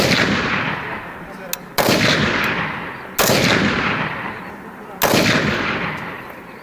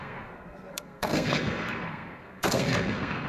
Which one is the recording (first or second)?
first